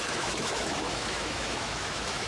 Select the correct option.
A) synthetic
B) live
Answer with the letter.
A